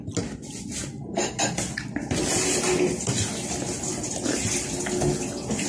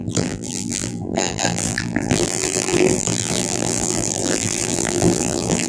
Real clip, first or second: first